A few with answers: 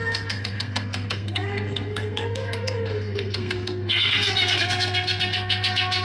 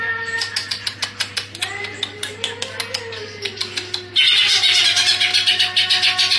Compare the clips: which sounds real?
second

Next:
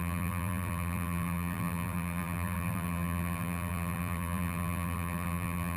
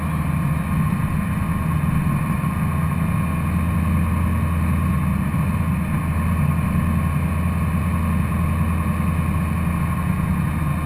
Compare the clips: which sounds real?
second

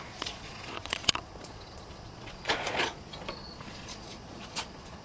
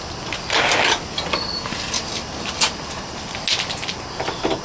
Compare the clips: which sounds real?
second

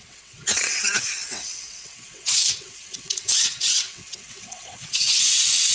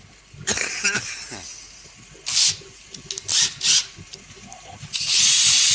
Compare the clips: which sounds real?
second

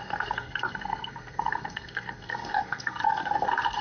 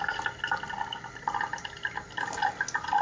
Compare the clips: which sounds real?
second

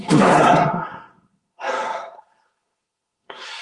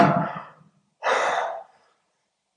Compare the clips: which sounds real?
second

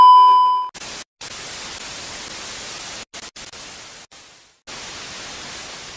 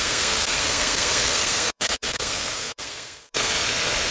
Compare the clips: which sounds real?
first